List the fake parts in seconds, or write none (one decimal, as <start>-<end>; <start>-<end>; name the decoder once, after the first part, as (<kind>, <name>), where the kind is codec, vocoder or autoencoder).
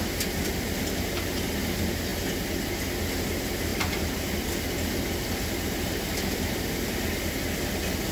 3.7-4.5 (vocoder, BigVGAN v2)